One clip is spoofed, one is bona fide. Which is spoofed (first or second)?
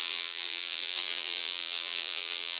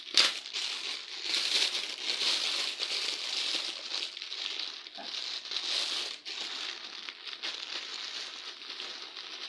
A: first